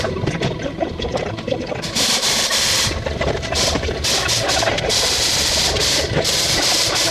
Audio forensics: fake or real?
fake